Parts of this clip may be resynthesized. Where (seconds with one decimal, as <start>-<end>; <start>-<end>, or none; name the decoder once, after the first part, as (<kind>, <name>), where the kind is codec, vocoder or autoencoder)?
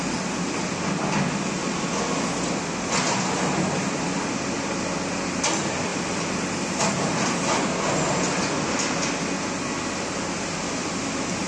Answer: none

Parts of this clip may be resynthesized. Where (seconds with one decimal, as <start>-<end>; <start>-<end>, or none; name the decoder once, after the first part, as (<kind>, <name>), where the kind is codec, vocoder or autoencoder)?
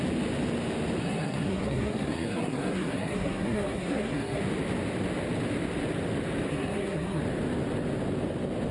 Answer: 1.0-4.4 (codec, SNAC); 6.5-7.2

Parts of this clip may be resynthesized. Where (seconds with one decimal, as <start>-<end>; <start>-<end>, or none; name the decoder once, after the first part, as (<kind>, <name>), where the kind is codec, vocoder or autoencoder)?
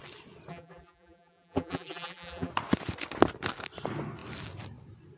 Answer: 0.5-2.5 (vocoder, BigVGAN v2)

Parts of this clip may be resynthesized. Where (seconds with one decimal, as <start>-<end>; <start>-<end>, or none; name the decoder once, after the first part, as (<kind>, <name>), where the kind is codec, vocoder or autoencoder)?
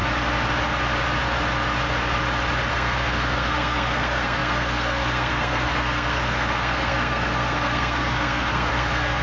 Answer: 2.7-9.2 (codec, SNAC)